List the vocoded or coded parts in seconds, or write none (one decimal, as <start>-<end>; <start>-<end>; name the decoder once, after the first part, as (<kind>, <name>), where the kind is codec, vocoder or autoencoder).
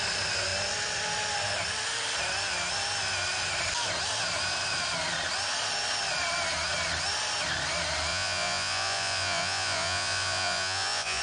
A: 8.1-11.2 (vocoder, Vocos)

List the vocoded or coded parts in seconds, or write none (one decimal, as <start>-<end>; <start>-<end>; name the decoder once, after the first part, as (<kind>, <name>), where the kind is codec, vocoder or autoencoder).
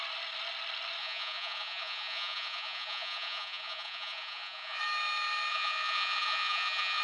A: 1.0-4.8 (vocoder, Vocos); 5.5-7.0